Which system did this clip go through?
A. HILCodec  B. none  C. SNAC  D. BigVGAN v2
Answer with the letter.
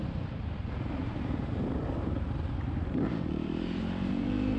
D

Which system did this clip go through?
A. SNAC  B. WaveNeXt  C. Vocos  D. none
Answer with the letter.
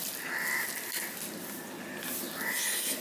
D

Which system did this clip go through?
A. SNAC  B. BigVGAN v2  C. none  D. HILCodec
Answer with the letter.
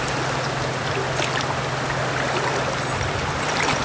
C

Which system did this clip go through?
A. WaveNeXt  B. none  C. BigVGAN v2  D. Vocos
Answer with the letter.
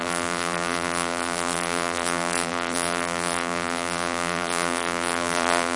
C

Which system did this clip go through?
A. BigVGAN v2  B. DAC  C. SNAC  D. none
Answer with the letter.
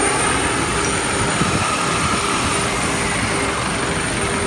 D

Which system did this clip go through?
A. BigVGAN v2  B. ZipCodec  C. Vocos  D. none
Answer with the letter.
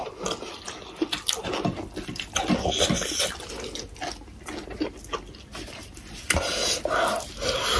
D